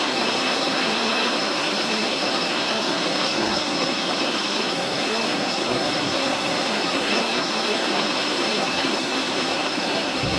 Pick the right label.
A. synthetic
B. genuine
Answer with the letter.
A